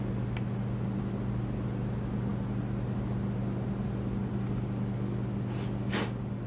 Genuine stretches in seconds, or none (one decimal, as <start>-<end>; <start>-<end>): 0.0-6.5